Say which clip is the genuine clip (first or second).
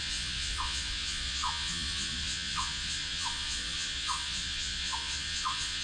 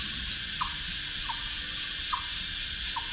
second